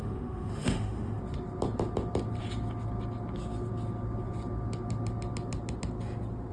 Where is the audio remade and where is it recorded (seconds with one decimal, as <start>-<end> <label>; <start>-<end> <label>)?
0.0-1.2 remade; 1.2-6.5 recorded